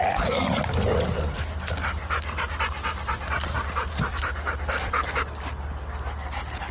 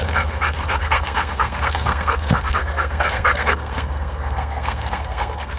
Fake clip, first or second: second